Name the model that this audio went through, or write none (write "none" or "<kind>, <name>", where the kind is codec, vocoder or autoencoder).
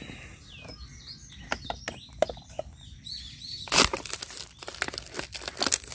none